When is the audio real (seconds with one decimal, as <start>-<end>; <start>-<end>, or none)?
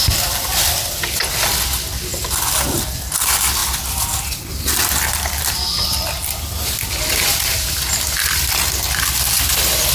0.0-9.9